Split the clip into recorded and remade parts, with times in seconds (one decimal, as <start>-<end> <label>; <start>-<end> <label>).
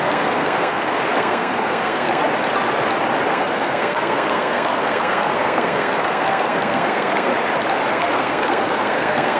0.0-2.2 remade; 2.2-3.3 recorded; 3.3-7.3 remade; 7.3-7.9 recorded; 7.9-9.4 remade